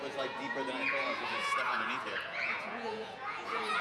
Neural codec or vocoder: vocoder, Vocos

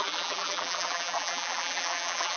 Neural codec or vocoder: vocoder, BigVGAN v2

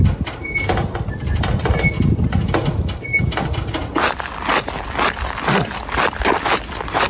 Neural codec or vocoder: none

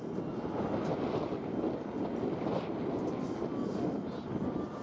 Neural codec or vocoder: none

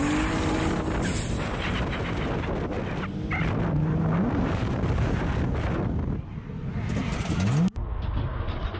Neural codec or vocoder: none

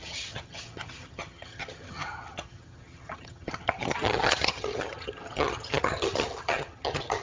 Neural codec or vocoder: vocoder, HiFi-GAN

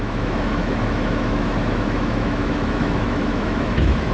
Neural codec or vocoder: autoencoder, DAC-VAE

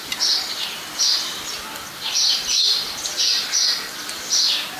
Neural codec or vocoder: none